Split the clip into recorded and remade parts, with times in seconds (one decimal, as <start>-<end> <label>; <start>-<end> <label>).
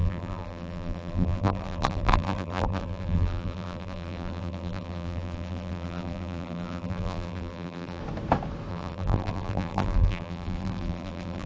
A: 0.0-8.0 remade; 8.0-8.7 recorded; 8.7-11.5 remade